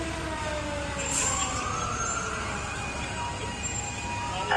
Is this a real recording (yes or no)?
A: yes